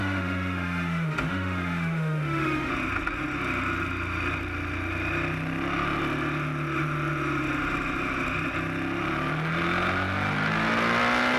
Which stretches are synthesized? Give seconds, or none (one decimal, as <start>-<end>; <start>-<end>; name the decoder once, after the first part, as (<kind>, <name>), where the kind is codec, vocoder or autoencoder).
0.0-2.7 (autoencoder, DAC-VAE)